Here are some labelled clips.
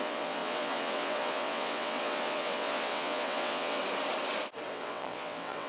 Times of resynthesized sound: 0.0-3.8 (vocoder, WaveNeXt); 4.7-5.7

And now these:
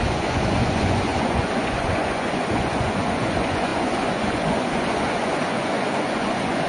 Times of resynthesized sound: 0.0-6.7 (vocoder, Vocos)

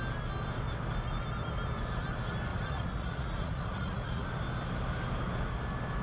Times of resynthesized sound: 2.5-4.3 (vocoder, Vocos)

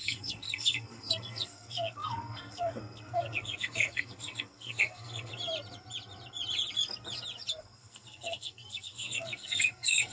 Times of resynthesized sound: 0.0-5.3 (codec, SNAC); 7.6-10.1